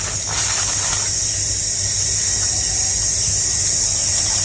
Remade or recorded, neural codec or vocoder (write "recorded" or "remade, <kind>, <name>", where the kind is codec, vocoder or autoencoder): recorded